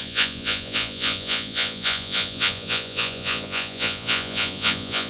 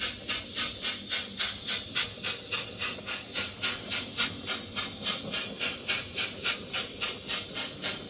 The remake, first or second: first